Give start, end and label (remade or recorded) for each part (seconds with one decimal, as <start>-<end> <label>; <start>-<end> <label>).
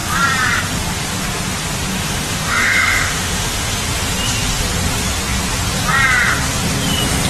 0.0-1.9 recorded; 1.9-3.7 remade; 3.7-7.3 recorded